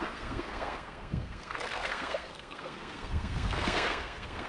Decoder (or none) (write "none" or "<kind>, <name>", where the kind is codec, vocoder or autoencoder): codec, SNAC